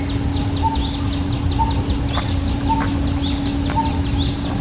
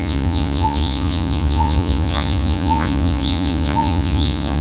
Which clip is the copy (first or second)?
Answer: second